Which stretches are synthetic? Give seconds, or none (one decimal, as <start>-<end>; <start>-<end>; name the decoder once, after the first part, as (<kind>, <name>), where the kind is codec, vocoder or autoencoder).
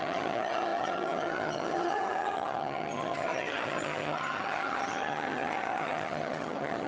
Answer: 0.0-6.9 (vocoder, HiFi-GAN)